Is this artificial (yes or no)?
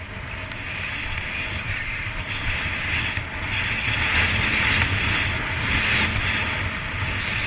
no